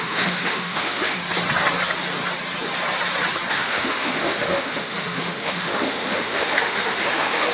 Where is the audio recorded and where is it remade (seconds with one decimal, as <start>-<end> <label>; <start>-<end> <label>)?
0.0-1.2 remade; 1.2-3.5 recorded; 3.5-7.5 remade